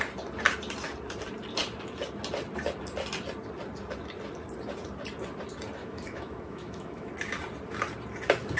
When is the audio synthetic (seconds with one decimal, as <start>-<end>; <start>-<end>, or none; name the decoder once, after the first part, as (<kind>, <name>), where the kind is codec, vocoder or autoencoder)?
5.8-7.1 (autoencoder, DAC-VAE)